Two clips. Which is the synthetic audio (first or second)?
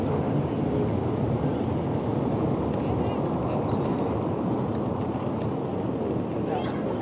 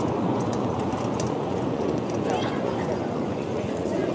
second